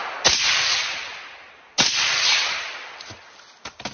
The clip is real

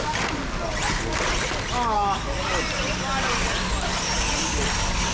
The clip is real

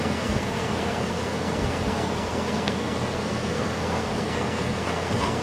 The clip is fake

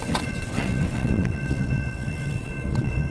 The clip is fake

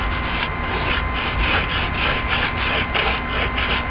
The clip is real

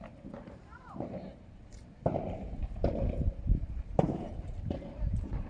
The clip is fake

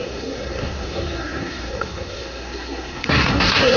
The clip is fake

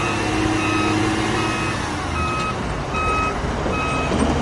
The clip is real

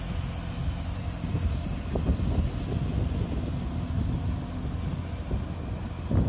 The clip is real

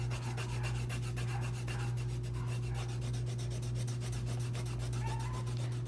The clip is real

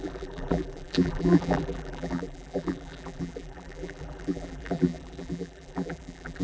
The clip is fake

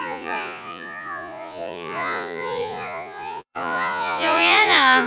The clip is fake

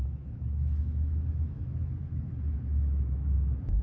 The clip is fake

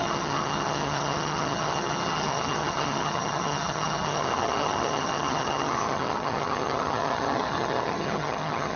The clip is fake